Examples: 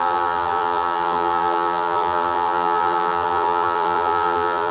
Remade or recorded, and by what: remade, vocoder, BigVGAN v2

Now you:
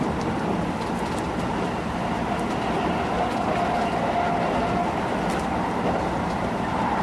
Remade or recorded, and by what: recorded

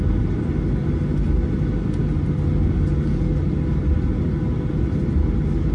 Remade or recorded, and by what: recorded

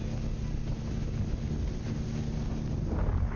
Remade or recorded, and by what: recorded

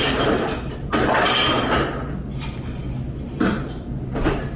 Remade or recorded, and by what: recorded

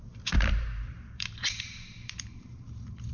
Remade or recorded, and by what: remade, vocoder, BigVGAN v2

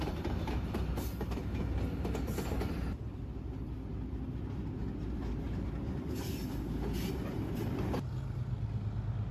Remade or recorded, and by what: recorded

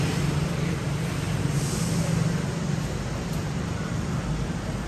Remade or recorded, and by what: recorded